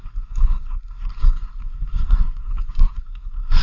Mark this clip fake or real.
fake